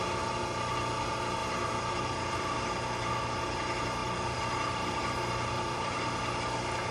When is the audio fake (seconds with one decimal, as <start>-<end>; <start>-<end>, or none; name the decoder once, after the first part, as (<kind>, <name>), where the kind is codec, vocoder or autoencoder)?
1.4-3.1 (vocoder, BigVGAN v2); 4.0-6.1